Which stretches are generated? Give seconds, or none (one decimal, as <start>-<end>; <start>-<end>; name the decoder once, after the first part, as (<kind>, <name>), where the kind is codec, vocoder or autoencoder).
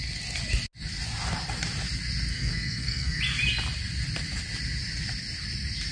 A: 2.3-3.2 (codec, SNAC)